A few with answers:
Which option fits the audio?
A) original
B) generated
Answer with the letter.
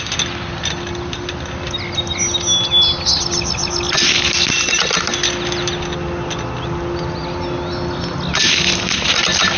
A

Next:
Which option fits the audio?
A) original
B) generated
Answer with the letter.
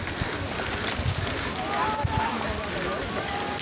A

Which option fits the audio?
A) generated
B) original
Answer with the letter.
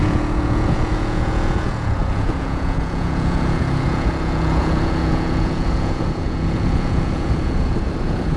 A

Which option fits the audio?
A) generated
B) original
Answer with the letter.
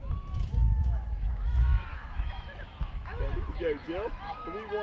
A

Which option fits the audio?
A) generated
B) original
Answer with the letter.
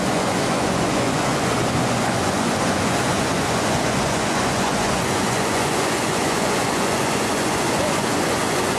A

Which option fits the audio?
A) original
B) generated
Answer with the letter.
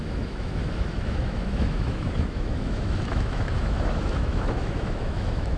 B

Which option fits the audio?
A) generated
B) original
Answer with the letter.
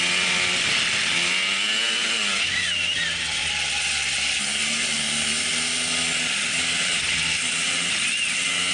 B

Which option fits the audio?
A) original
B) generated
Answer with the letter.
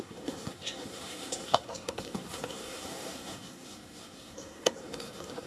B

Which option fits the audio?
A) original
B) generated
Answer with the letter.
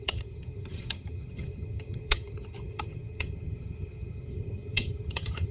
B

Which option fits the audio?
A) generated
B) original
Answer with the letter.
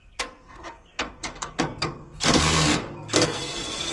A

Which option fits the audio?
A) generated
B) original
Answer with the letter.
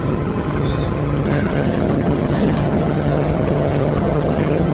A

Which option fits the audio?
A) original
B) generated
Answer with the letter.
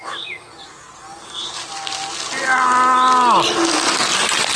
A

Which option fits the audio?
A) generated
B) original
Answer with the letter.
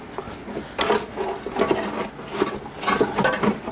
B